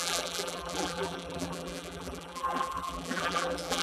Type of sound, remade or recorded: remade